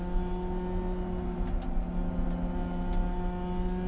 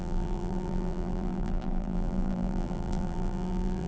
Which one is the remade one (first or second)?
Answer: second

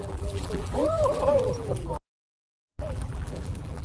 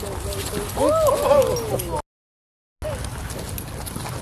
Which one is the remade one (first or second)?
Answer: first